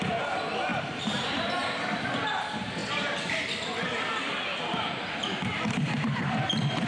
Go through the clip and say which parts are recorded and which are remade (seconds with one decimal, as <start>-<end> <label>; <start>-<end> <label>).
0.0-2.8 recorded; 2.8-6.2 remade; 6.2-6.9 recorded